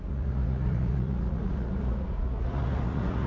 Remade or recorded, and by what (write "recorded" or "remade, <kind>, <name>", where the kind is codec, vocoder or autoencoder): remade, vocoder, Vocos